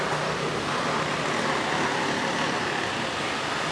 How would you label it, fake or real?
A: real